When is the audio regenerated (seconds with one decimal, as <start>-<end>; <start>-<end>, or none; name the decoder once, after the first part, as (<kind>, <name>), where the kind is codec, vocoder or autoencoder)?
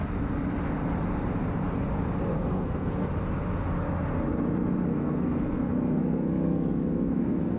2.3-3.1 (codec, SNAC); 4.9-7.6